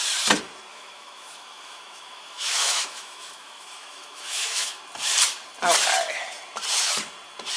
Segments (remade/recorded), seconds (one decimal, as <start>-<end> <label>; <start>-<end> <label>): 0.0-0.7 recorded; 0.7-4.8 remade; 4.8-7.6 recorded